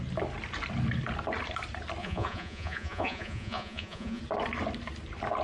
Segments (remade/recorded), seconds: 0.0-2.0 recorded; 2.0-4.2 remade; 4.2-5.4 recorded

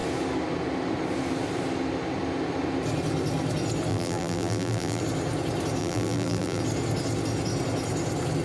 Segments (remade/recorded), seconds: 0.0-3.9 recorded; 3.9-5.0 remade; 5.0-5.8 recorded; 5.8-6.6 remade; 6.6-8.4 recorded

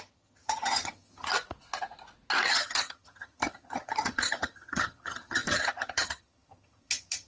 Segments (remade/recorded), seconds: 0.0-1.3 remade; 1.3-2.5 recorded; 2.5-7.3 remade

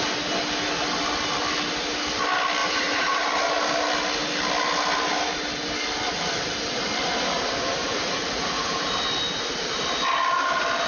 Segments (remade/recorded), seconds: 0.0-2.6 recorded; 2.6-3.3 remade; 3.3-7.8 recorded; 7.8-8.9 remade; 8.9-10.9 recorded

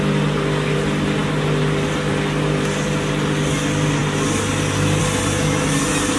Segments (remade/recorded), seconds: 0.0-6.2 recorded

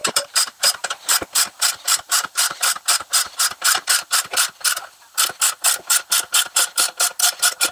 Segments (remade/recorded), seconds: 0.0-4.2 remade; 4.2-7.7 recorded

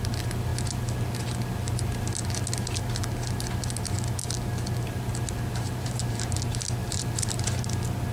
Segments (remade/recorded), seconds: 0.0-5.5 recorded; 5.5-6.3 remade; 6.3-6.8 recorded; 6.8-7.6 remade; 7.6-8.1 recorded

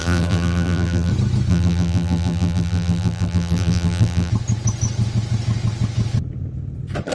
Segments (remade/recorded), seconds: 0.0-1.1 remade; 1.1-1.5 recorded; 1.5-4.3 remade; 4.3-7.1 recorded